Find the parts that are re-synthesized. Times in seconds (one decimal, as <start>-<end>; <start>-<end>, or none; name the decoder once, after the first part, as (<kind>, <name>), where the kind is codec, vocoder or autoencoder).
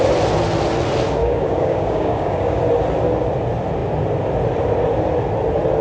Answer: 1.2-2.6 (codec, DAC)